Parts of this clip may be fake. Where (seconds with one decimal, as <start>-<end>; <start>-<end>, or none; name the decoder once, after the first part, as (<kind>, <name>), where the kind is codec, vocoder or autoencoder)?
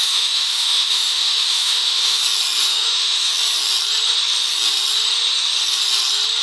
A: 0.0-2.2 (autoencoder, DAC-VAE); 2.7-3.3